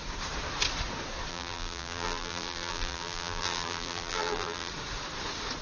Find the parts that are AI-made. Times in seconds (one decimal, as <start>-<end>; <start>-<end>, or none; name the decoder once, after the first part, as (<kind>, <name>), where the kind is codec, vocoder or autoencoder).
1.3-4.7 (vocoder, BigVGAN v2)